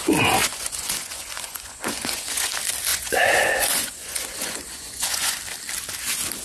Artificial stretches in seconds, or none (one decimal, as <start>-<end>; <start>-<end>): 0.4-2.5; 2.9-5.4